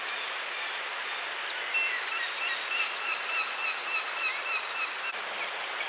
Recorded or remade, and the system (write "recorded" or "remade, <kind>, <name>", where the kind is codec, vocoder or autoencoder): recorded